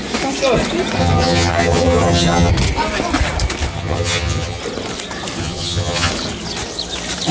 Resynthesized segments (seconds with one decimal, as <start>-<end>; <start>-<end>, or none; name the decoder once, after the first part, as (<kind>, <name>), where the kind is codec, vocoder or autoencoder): 1.0-2.5 (vocoder, HiFi-GAN); 3.7-4.6; 5.4-6.1